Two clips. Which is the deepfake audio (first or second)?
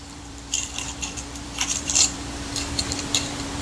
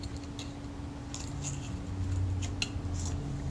first